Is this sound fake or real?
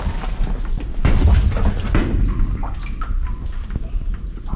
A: real